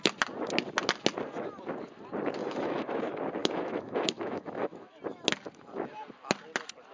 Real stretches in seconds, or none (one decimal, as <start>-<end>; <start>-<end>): 0.0-2.4; 3.0-3.4; 5.0-6.9